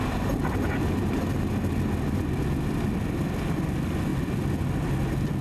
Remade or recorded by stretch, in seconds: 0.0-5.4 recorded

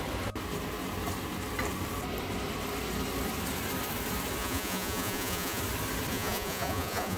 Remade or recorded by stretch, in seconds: 0.0-4.4 recorded; 4.4-5.6 remade; 5.6-6.1 recorded; 6.1-7.2 remade

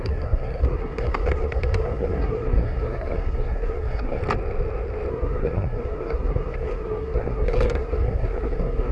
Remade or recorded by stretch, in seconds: 0.0-4.2 remade; 4.2-5.1 recorded; 5.1-8.9 remade

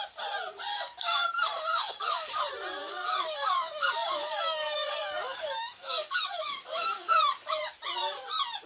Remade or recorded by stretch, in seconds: 0.0-0.7 recorded; 0.7-2.4 remade; 2.4-2.8 recorded; 2.8-7.6 remade; 7.6-8.7 recorded